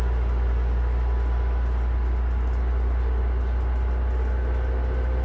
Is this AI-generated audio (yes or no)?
no